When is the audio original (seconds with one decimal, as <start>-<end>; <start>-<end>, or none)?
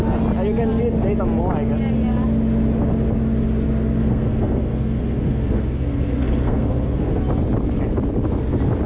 0.0-4.0; 7.2-8.9